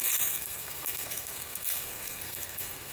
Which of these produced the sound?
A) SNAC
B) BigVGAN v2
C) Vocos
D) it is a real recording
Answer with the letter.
A